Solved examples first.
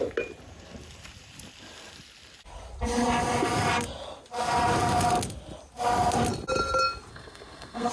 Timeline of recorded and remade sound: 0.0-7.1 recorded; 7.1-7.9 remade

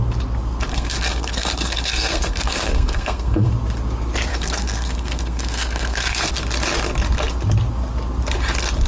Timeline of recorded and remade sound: 0.0-0.7 recorded; 0.7-3.5 remade; 3.5-4.3 recorded; 4.3-6.3 remade; 6.3-8.9 recorded

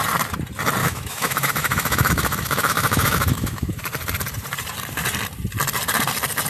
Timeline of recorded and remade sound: 0.0-0.8 recorded; 0.8-3.8 remade; 3.8-6.5 recorded

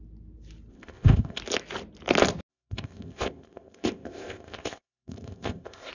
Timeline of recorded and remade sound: 0.0-0.7 recorded; 0.7-1.4 remade; 1.4-2.5 recorded; 2.5-5.9 remade

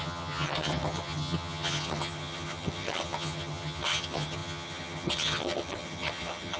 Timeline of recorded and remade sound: 0.0-6.6 remade

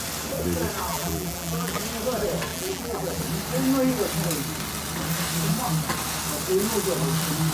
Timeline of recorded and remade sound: 0.0-0.9 recorded; 0.9-1.8 remade; 1.8-2.5 recorded; 2.5-3.2 remade; 3.2-7.5 recorded

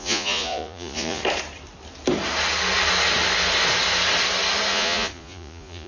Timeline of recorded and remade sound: 0.0-1.2 remade; 1.2-4.7 recorded; 4.7-5.9 remade

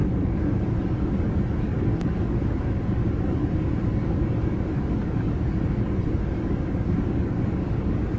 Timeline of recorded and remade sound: 0.0-8.2 remade